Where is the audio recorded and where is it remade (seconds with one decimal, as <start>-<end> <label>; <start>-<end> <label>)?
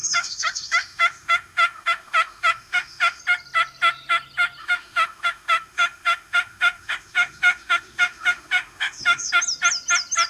0.0-3.2 remade; 3.2-4.6 recorded; 4.6-9.3 remade; 9.3-10.3 recorded